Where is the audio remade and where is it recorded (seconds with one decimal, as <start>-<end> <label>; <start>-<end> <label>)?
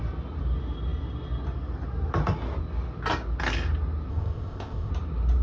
0.0-4.1 recorded; 4.1-4.9 remade; 4.9-5.4 recorded